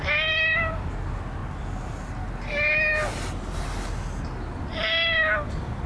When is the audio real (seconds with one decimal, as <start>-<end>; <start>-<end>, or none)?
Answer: 0.0-5.9